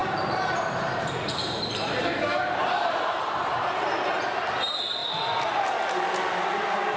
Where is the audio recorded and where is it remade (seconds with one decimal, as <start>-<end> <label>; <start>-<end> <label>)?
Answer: 0.0-4.2 remade; 4.2-7.0 recorded

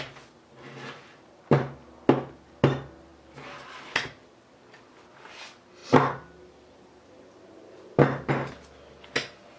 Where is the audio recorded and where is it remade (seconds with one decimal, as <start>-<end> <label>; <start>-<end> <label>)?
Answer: 0.0-9.6 recorded

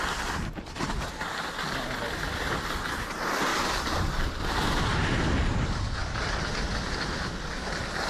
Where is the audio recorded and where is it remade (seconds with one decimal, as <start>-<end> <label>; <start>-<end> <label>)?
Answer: 0.0-3.5 recorded; 3.5-5.0 remade; 5.0-8.1 recorded

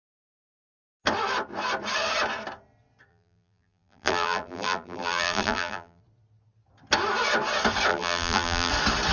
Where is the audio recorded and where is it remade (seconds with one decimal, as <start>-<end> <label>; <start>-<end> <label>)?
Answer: 0.0-3.1 recorded; 3.1-6.0 remade; 6.0-7.9 recorded; 7.9-8.7 remade; 8.7-9.1 recorded

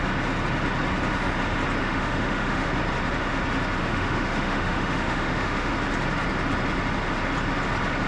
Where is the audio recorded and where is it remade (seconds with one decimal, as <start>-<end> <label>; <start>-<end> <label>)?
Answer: 0.0-1.8 recorded; 1.8-2.7 remade; 2.7-3.8 recorded; 3.8-5.7 remade; 5.7-8.1 recorded

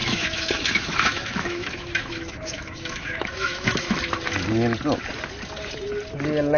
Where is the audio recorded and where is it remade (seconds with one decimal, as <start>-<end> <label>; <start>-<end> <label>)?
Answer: 0.0-4.0 remade; 4.0-6.6 recorded

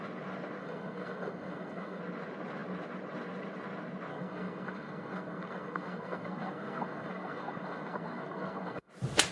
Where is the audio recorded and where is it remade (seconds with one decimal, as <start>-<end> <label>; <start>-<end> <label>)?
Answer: 0.0-0.6 recorded; 0.6-2.0 remade; 2.0-4.1 recorded; 4.1-8.9 remade; 8.9-9.3 recorded